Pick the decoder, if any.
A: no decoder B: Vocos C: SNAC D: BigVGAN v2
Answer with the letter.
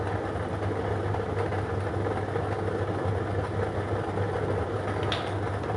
A